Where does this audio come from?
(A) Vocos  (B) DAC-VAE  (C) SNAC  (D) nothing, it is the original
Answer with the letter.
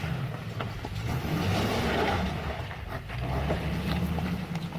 D